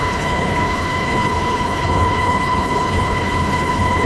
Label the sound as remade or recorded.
remade